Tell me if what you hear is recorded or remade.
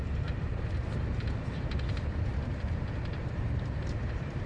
remade